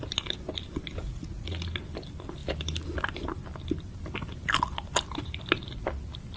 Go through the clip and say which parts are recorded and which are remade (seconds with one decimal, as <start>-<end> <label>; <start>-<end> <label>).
0.0-1.0 recorded; 1.0-1.6 remade; 1.6-6.4 recorded